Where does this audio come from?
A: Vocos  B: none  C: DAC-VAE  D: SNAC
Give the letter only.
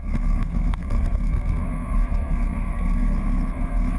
D